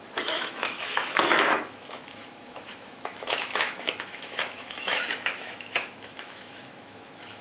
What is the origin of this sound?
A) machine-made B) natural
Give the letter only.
A